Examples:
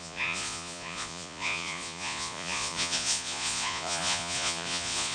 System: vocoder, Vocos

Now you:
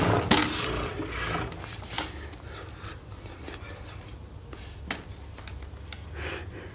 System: none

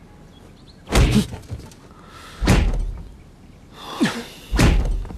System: none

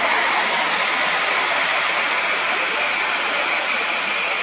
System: none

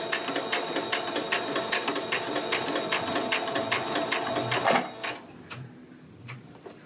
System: none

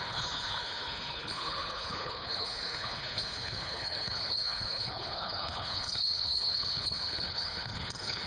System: codec, HILCodec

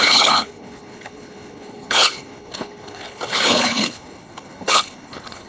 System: codec, HILCodec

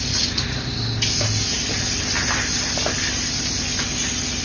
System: none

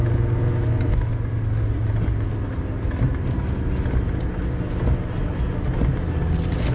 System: none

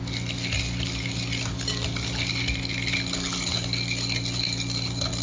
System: none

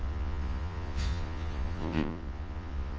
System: vocoder, Vocos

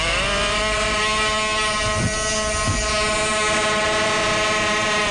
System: none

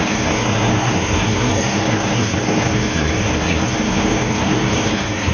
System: codec, SNAC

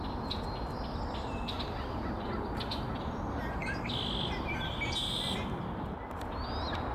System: none